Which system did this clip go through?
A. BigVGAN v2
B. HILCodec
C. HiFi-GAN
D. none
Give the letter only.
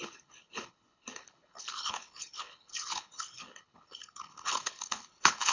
B